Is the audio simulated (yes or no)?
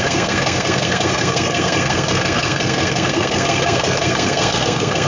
yes